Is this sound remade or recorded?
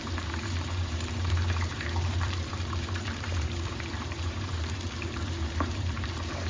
remade